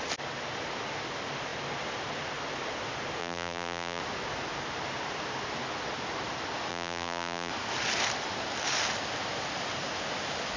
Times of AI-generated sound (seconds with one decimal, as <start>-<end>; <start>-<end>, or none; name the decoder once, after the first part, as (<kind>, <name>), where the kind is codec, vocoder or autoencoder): 3.2-4.0 (vocoder, BigVGAN v2); 6.7-7.5